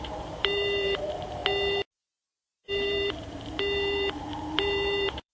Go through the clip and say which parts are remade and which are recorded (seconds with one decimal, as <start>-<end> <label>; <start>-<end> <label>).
0.0-1.4 remade; 1.4-2.6 recorded; 2.6-5.3 remade